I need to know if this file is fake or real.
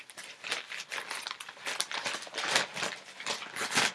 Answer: real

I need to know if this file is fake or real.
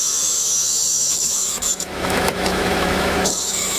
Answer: fake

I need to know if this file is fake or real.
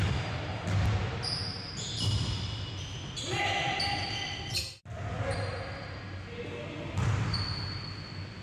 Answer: real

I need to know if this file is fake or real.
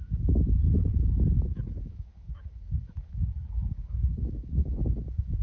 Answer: fake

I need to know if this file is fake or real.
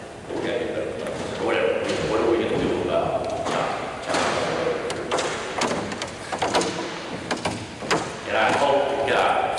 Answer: real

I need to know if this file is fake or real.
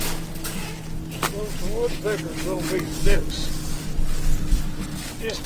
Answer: real